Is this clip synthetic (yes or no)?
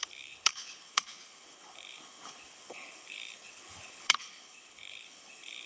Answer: yes